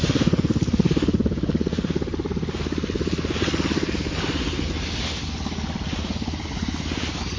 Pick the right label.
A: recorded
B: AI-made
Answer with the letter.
A